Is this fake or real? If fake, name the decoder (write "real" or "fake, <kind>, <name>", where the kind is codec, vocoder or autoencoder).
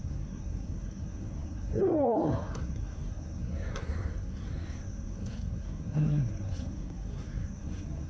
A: fake, codec, SNAC